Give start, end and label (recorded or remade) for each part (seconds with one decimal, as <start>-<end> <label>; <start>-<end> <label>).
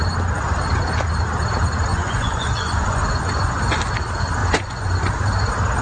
0.0-1.9 recorded; 1.9-3.6 remade; 3.6-4.4 recorded; 4.4-5.1 remade; 5.1-5.8 recorded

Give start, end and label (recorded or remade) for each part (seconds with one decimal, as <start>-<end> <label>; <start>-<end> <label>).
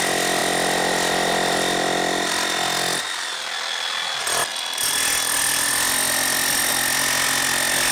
0.0-7.9 recorded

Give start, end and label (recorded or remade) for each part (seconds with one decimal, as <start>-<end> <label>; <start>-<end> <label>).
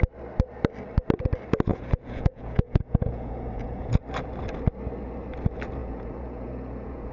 0.0-1.7 recorded; 1.7-4.0 remade; 4.0-5.8 recorded; 5.8-7.1 remade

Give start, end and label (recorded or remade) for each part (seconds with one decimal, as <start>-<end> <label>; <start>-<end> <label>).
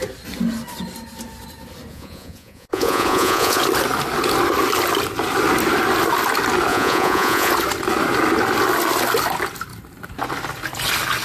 0.0-1.9 recorded; 1.9-3.6 remade; 3.6-6.7 recorded; 6.7-7.5 remade; 7.5-11.2 recorded